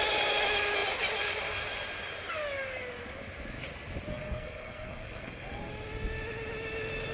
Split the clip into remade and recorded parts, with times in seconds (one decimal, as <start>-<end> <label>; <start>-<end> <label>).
0.0-4.1 recorded; 4.1-5.7 remade; 5.7-7.1 recorded